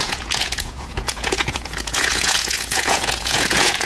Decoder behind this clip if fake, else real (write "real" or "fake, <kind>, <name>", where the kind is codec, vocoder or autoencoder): fake, vocoder, Vocos